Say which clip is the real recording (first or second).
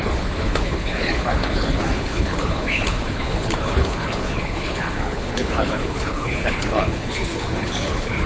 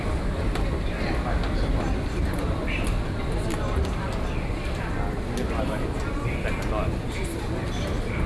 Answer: second